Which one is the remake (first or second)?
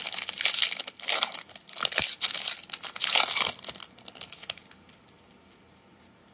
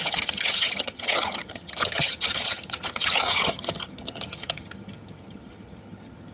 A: second